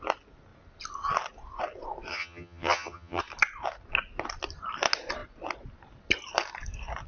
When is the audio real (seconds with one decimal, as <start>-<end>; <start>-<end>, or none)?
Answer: 0.0-2.1; 3.2-7.1